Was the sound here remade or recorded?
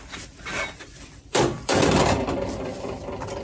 remade